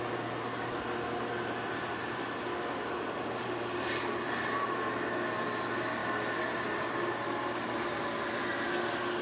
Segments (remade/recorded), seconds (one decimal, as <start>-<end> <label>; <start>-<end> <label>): 0.0-9.2 recorded